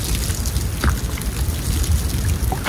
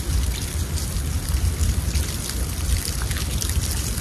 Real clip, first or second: first